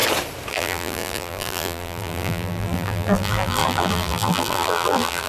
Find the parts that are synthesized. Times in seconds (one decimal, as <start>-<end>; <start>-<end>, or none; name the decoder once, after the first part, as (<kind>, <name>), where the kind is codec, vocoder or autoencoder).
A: 0.5-5.3 (vocoder, BigVGAN v2)

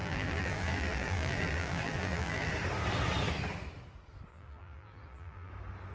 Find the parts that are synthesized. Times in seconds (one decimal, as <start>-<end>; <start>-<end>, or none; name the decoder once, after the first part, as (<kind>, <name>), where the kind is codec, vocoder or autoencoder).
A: 0.0-2.5 (vocoder, BigVGAN v2); 4.3-5.5

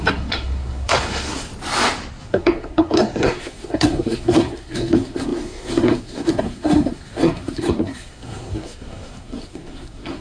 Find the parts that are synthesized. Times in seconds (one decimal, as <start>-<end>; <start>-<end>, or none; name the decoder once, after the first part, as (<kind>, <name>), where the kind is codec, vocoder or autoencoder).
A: 0.0-1.5 (codec, SNAC); 2.2-10.2

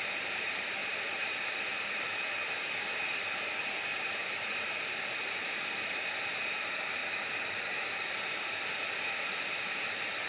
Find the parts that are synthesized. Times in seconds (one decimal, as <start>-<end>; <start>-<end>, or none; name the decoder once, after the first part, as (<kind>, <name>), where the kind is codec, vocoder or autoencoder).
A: 0.0-10.3 (vocoder, BigVGAN v2)

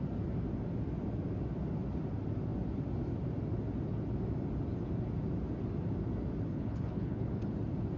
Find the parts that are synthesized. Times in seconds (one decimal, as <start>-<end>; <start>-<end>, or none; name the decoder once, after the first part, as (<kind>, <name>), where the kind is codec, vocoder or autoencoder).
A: 6.5-7.4 (codec, HILCodec)